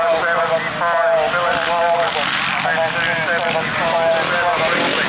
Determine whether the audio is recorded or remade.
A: recorded